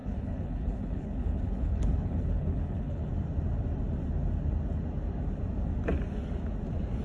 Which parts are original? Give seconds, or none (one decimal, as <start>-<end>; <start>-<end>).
3.1-7.0